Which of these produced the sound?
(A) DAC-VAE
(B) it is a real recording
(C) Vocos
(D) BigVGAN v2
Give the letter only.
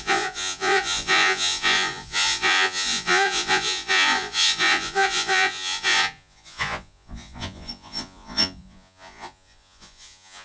C